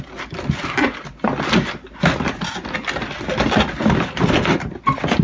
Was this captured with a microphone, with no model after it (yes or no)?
yes